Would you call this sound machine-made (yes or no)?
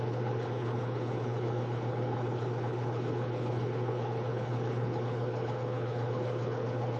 yes